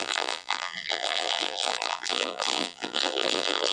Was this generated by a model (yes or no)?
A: yes